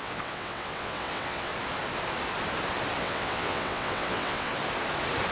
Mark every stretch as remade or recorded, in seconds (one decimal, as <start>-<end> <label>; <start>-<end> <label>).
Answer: 0.0-1.5 remade; 1.5-3.0 recorded; 3.0-4.5 remade; 4.5-5.3 recorded